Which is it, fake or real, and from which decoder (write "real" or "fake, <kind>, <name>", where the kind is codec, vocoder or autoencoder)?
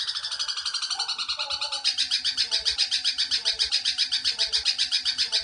real